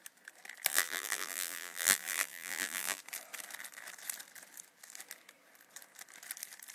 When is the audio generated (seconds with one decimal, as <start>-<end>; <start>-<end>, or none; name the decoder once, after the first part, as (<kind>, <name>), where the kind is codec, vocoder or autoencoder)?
0.7-3.0 (vocoder, BigVGAN v2)